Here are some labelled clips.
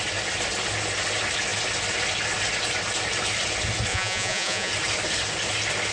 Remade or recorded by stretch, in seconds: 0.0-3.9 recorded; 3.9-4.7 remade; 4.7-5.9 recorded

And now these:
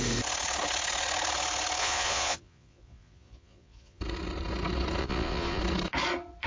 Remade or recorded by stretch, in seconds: 0.0-1.8 recorded; 1.8-4.0 remade; 4.0-5.0 recorded; 5.0-5.6 remade; 5.6-6.5 recorded

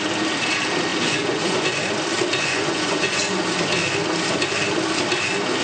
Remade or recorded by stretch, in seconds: 0.0-0.9 recorded; 0.9-1.8 remade; 1.8-2.4 recorded; 2.4-3.2 remade; 3.2-5.6 recorded